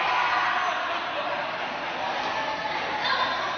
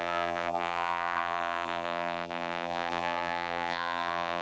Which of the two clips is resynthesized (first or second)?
second